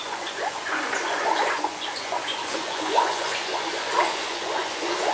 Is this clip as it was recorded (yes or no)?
no